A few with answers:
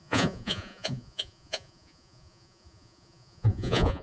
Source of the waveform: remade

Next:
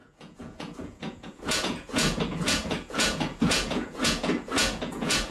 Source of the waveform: remade